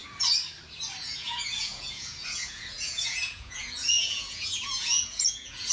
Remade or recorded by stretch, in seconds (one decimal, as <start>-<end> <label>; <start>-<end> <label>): 0.0-1.0 recorded; 1.0-5.7 remade